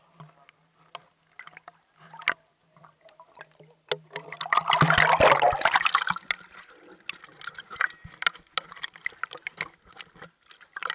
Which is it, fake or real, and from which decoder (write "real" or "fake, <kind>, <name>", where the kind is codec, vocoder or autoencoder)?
real